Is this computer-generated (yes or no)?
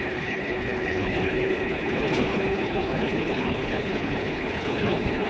yes